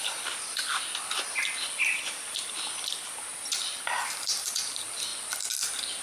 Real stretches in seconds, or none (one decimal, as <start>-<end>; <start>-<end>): 5.1-6.0